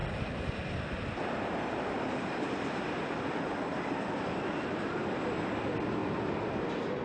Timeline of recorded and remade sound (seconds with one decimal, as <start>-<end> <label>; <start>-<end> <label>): 0.0-7.0 recorded

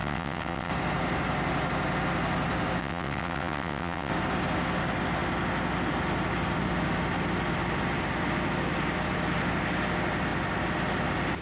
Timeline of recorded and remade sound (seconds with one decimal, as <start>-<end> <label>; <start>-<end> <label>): 0.0-0.7 remade; 0.7-2.8 recorded; 2.8-4.1 remade; 4.1-11.4 recorded

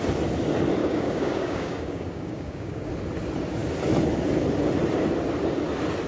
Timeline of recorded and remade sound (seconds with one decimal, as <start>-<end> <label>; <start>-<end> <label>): 0.0-0.8 recorded; 0.8-2.9 remade; 2.9-6.1 recorded

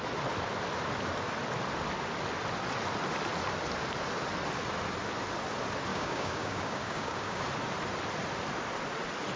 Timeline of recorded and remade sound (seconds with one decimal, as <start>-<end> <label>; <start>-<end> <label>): 0.0-5.9 recorded; 5.9-7.4 remade; 7.4-9.4 recorded